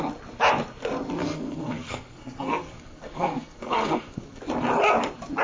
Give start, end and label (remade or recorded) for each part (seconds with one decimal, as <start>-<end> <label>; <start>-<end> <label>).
0.0-1.2 recorded; 1.2-4.4 remade; 4.4-5.4 recorded